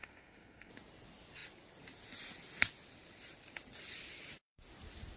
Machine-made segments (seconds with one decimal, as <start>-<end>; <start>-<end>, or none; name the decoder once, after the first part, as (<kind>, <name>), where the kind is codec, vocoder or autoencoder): 0.0-0.7 (codec, SNAC)